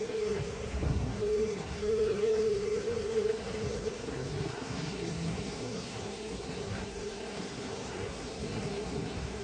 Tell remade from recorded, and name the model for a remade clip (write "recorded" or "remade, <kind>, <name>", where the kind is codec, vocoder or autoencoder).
remade, codec, SNAC